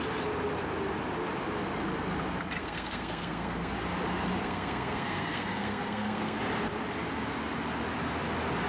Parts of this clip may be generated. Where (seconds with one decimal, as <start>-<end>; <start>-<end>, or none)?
2.6-3.7; 4.4-6.4